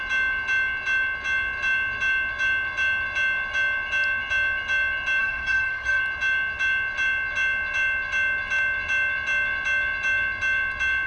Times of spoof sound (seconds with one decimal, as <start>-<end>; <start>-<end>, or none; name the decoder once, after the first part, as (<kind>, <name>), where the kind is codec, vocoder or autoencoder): 5.2-6.0 (codec, SNAC)